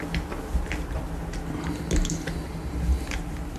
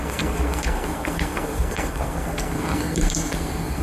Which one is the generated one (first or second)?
second